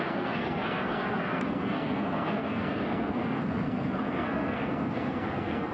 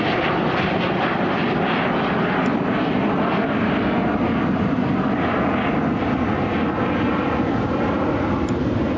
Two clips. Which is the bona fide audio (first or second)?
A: second